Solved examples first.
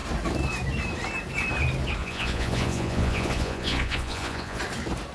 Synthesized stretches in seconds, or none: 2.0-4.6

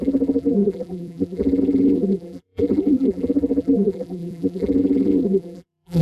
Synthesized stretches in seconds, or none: 0.0-6.0

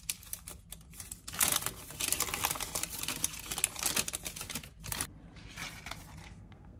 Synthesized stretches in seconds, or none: 6.2-6.8

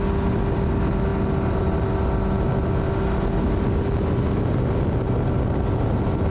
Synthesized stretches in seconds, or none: none

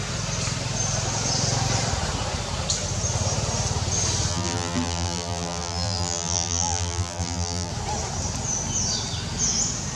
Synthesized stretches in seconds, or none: 4.3-7.7

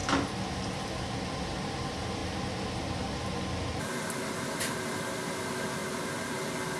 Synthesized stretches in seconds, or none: none

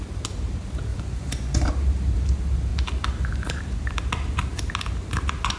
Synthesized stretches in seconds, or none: 0.9-1.7

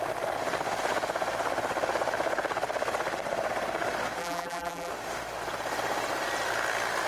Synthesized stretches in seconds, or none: 4.2-4.9